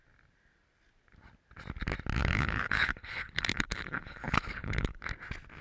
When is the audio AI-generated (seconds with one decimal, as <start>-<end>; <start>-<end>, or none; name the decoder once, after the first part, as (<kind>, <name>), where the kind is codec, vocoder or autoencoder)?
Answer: 2.2-5.0 (codec, HILCodec)